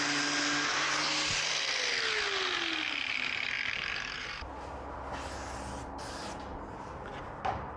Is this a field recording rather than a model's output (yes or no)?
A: yes